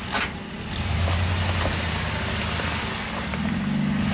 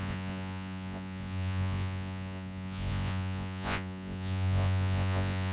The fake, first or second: second